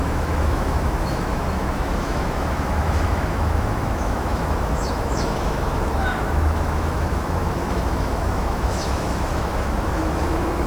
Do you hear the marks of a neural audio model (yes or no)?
yes